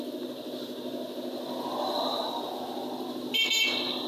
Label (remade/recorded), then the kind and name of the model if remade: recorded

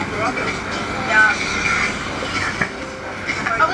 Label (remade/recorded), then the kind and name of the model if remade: recorded